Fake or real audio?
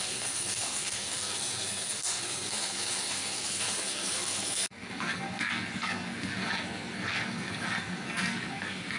fake